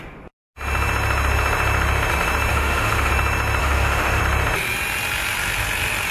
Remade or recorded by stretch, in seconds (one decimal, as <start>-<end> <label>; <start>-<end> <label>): 0.0-2.5 recorded; 2.5-3.1 remade; 3.1-3.6 recorded; 3.6-4.2 remade; 4.2-6.1 recorded